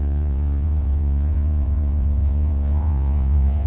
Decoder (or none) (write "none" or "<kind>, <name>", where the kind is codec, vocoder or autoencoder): vocoder, Vocos